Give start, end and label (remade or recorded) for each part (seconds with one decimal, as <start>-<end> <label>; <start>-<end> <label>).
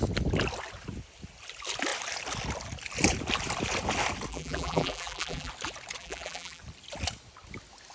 0.0-4.3 recorded; 4.3-5.5 remade; 5.5-6.0 recorded; 6.0-6.6 remade; 6.6-7.9 recorded